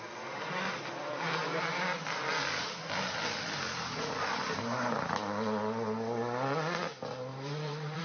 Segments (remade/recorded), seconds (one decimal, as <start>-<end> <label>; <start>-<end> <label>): 0.0-7.3 recorded; 7.3-8.0 remade